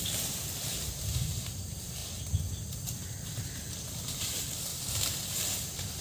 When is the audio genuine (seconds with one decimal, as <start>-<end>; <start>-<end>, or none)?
2.0-4.3; 4.7-6.0